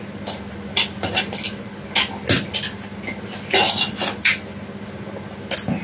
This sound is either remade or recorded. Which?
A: recorded